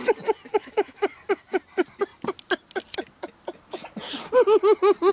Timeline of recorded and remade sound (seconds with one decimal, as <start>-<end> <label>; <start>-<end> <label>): 0.0-0.5 recorded; 0.5-1.1 remade; 1.1-5.1 recorded